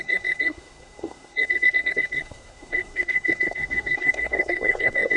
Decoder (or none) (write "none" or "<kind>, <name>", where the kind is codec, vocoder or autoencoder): codec, SNAC